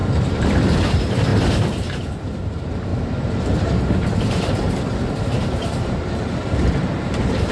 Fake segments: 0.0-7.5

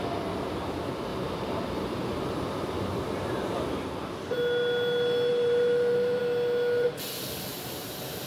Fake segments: 1.1-3.1; 5.3-6.2; 7.5-8.3

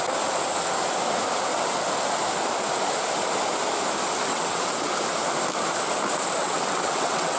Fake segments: 4.3-4.8; 6.4-7.4